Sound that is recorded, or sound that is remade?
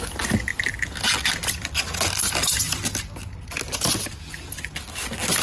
recorded